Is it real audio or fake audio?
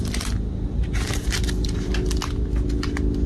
real